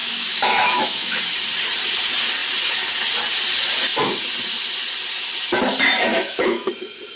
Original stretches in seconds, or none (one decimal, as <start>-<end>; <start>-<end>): 1.2-6.1; 6.7-7.2